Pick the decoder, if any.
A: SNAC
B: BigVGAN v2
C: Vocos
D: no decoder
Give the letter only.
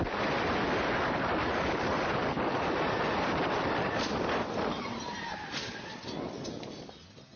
D